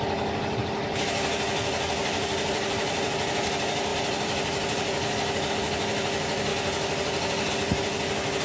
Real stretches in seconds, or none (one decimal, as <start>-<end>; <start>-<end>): 0.0-3.9; 5.5-8.4